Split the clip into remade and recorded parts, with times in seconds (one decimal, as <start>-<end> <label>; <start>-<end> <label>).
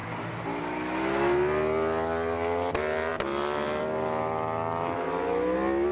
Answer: 0.0-5.9 recorded